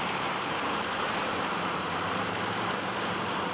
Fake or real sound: fake